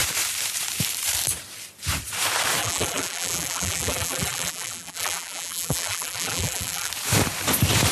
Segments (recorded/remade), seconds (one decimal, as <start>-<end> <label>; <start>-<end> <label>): 0.0-2.6 recorded; 2.6-6.9 remade; 6.9-7.9 recorded